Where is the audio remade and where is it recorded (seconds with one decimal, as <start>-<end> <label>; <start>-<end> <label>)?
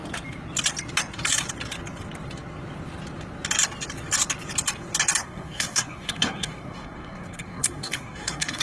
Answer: 0.0-5.2 recorded; 5.2-8.6 remade